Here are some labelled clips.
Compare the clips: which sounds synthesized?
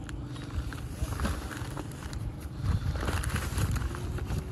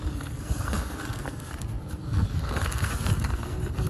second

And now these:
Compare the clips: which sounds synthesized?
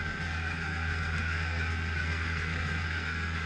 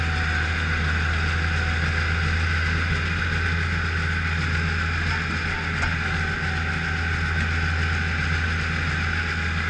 first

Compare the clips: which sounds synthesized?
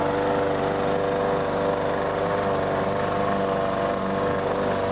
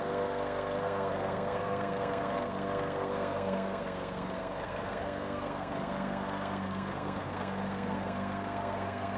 second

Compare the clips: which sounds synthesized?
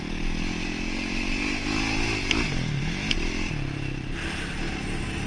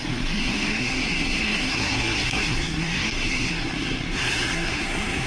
second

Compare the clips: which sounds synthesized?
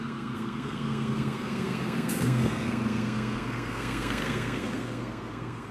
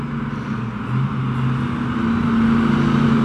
first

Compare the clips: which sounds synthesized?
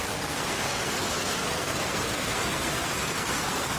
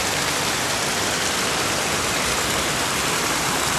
first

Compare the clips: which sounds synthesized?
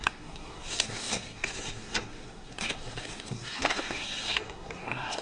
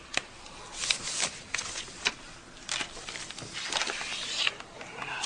first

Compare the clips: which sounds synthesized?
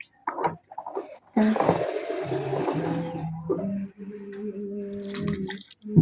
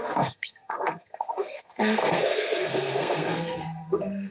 second